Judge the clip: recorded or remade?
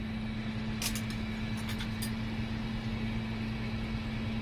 recorded